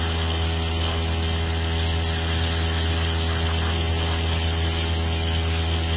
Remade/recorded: recorded